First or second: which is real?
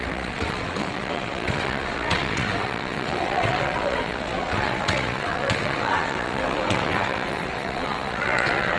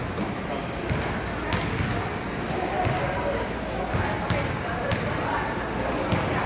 second